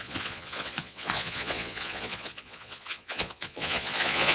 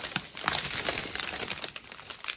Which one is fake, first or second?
first